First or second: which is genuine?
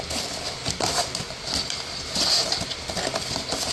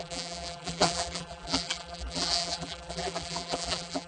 first